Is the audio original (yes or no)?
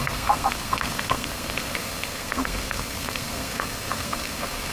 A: no